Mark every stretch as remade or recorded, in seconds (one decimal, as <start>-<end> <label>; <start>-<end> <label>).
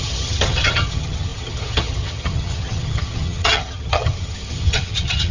0.0-5.3 remade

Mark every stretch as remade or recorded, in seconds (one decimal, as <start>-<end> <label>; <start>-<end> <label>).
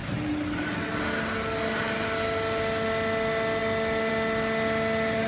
0.0-5.3 recorded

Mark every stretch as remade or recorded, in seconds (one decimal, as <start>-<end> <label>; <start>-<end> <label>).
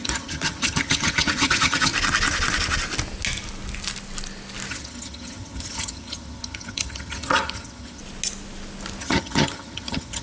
0.0-1.9 remade; 1.9-4.7 recorded; 4.7-8.0 remade; 8.0-9.0 recorded; 9.0-10.2 remade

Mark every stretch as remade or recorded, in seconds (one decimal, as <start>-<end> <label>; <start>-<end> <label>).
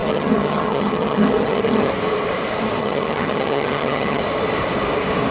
0.0-1.9 remade; 1.9-2.8 recorded; 2.8-4.2 remade; 4.2-5.3 recorded